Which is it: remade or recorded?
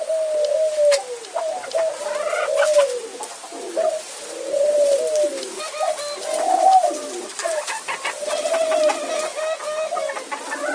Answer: recorded